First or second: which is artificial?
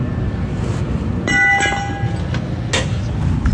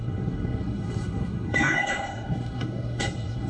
second